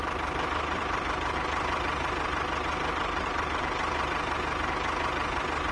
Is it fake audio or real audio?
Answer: real